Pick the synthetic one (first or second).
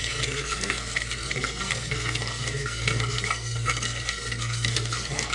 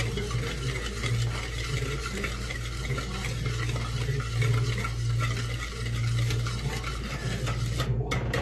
first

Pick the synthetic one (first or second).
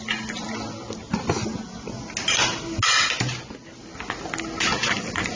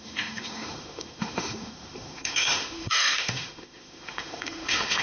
second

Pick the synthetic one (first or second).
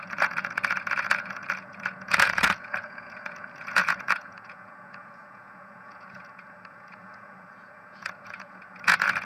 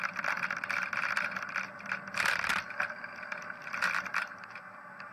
first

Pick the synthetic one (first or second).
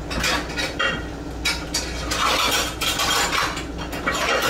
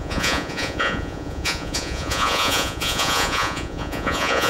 second